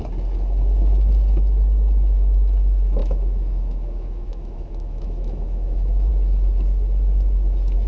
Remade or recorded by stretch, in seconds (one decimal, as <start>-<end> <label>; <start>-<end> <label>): 0.0-3.0 recorded; 3.0-6.1 remade; 6.1-7.9 recorded